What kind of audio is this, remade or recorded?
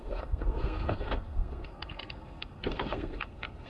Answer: remade